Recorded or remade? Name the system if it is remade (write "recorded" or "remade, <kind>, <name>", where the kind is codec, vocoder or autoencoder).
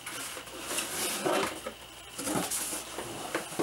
recorded